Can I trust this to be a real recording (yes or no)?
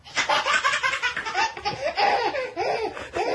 yes